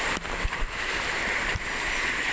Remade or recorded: recorded